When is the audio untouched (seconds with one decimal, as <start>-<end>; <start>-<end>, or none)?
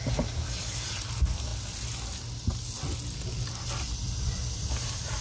0.0-5.2